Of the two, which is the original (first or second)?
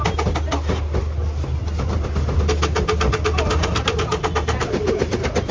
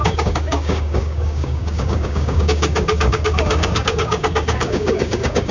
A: first